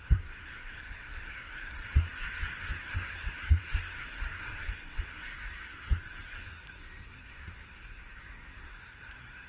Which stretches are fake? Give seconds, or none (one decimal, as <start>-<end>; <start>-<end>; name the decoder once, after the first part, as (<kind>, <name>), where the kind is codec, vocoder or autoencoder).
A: 0.0-9.5 (codec, SNAC)